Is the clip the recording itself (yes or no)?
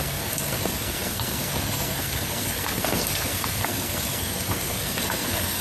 no